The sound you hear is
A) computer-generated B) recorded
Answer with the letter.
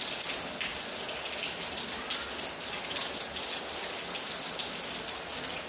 B